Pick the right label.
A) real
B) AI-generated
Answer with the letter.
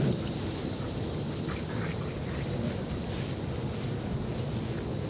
A